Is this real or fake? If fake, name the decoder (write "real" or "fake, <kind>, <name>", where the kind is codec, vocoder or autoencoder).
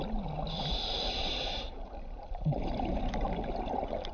real